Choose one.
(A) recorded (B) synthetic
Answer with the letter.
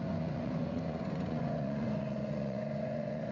B